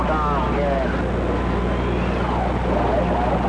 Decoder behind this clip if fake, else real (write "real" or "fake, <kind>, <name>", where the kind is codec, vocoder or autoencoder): real